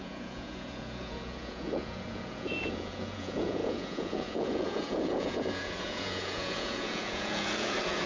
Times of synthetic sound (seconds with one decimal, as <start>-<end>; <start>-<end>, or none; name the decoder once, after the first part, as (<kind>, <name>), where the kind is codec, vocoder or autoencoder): 0.0-8.1 (vocoder, Vocos)